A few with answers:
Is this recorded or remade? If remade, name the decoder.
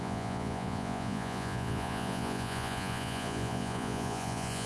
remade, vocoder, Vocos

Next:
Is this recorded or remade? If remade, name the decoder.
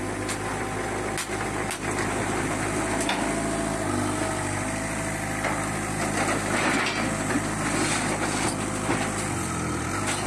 recorded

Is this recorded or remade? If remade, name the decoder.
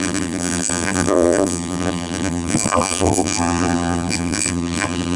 remade, vocoder, BigVGAN v2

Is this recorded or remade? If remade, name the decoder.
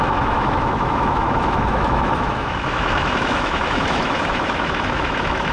remade, autoencoder, DAC-VAE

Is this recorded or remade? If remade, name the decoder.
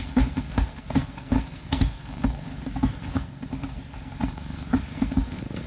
remade, codec, SNAC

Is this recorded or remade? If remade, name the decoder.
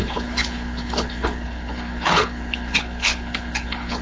remade, codec, HILCodec